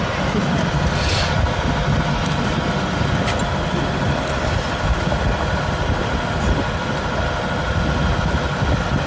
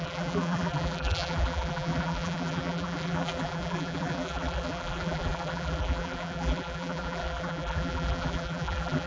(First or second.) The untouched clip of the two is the first